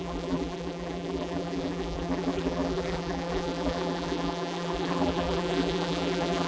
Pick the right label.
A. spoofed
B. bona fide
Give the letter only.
A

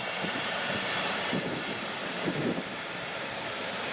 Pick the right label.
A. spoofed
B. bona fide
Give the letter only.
A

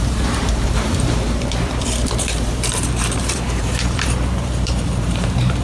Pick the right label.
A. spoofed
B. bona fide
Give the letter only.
A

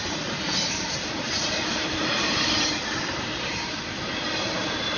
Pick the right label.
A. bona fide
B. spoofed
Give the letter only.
B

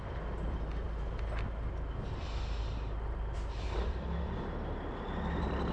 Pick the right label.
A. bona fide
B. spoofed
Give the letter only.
A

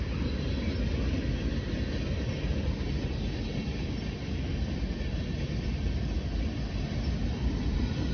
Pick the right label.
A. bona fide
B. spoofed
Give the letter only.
A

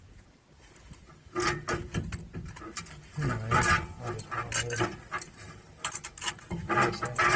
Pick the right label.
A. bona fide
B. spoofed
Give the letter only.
A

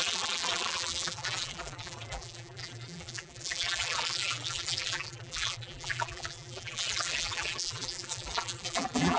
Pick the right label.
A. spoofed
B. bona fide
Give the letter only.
A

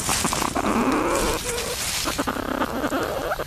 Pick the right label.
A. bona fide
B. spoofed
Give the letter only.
A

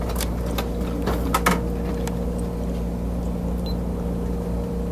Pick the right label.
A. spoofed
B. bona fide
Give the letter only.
B